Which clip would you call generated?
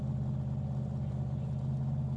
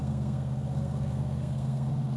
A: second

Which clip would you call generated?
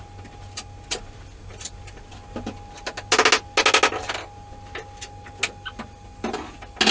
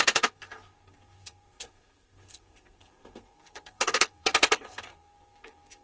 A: second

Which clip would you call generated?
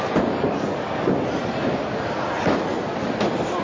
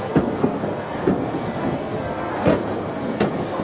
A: second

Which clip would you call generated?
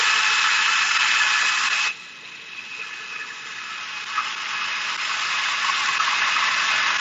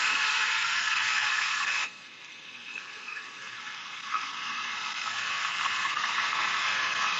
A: second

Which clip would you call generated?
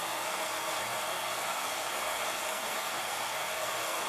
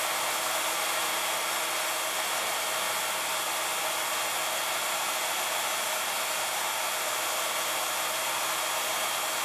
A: first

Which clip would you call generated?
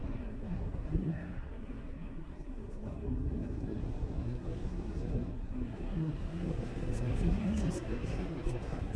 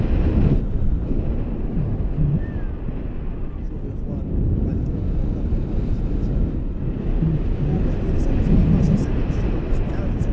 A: first